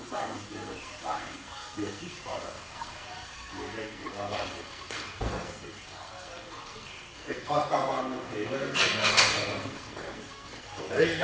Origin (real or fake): fake